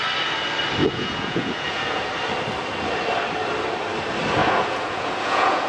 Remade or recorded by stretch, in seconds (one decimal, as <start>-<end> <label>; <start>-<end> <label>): 0.0-0.8 recorded; 0.8-2.1 remade; 2.1-4.4 recorded; 4.4-5.7 remade